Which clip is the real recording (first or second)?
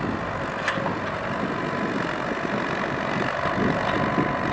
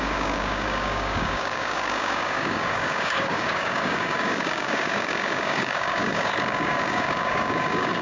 first